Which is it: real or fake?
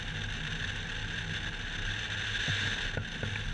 real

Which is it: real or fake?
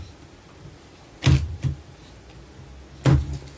real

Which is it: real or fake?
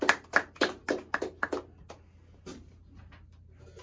real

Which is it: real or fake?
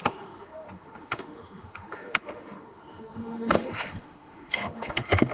fake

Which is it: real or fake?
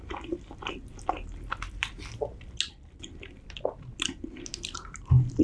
real